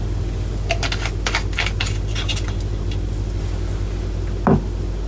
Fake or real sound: real